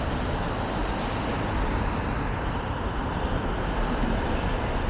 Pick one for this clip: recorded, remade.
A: remade